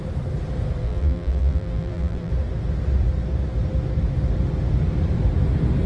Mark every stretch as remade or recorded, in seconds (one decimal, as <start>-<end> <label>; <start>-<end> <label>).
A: 0.0-0.8 recorded; 0.8-2.3 remade; 2.3-5.9 recorded